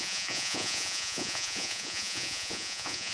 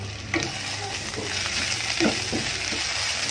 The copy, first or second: first